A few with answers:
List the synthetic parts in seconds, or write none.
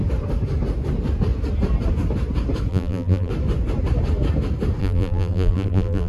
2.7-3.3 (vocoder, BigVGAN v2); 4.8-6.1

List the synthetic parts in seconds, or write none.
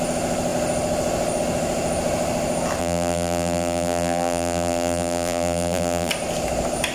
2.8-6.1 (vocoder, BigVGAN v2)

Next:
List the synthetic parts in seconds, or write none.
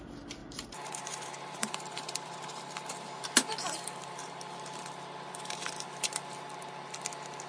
0.4-4.9 (vocoder, BigVGAN v2)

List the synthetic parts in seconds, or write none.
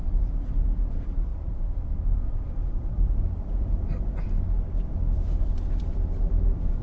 1.3-3.2 (vocoder, BigVGAN v2)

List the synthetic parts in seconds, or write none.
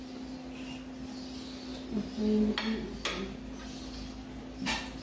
none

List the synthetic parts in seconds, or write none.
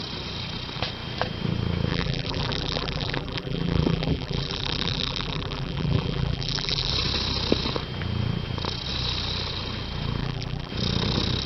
1.9-6.9 (vocoder, BigVGAN v2); 10.2-10.7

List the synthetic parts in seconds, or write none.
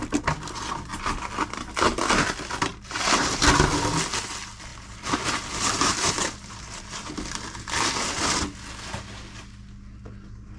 2.7-3.4 (vocoder, BigVGAN v2); 4.7-7.1